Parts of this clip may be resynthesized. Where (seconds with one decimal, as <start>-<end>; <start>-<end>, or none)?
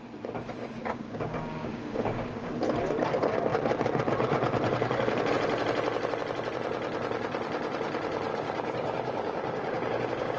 0.8-2.5; 8.3-10.4